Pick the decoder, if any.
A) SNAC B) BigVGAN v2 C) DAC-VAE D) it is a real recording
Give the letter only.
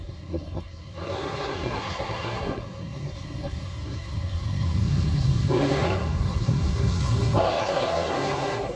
A